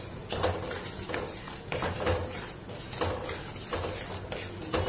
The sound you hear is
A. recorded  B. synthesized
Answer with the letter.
A